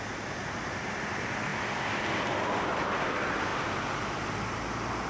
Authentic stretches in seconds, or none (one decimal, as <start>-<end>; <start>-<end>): 0.0-5.1